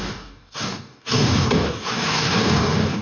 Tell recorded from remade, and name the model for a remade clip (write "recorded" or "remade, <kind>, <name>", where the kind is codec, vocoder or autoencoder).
remade, codec, DAC